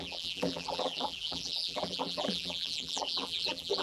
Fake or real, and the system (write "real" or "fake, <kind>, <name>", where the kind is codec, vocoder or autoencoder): fake, vocoder, BigVGAN v2